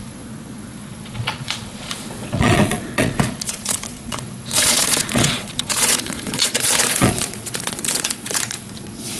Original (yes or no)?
no